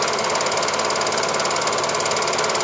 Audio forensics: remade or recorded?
recorded